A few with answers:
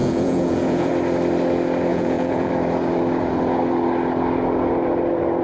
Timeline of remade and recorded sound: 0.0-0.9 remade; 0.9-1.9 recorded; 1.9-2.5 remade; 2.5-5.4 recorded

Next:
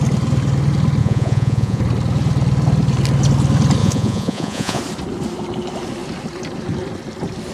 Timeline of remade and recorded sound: 0.0-1.0 recorded; 1.0-1.8 remade; 1.8-3.8 recorded; 3.8-4.8 remade; 4.8-7.5 recorded

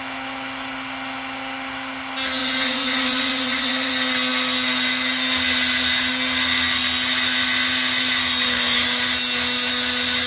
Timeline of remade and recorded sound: 0.0-2.4 recorded; 2.4-3.9 remade; 3.9-10.3 recorded